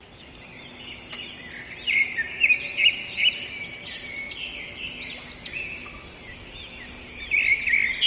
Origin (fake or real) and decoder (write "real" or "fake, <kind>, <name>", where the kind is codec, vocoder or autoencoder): real